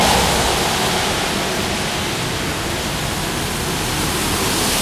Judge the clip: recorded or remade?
recorded